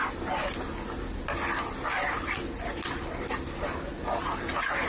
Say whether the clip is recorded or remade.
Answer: recorded